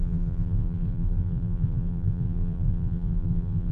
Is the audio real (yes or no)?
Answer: no